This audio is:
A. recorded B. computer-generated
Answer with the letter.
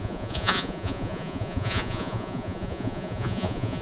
B